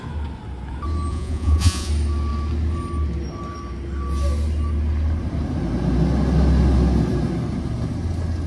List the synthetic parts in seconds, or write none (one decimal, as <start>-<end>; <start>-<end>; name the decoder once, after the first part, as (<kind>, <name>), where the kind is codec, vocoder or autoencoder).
1.1-1.9 (vocoder, Vocos)